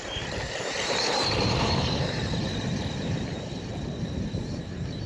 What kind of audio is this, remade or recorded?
remade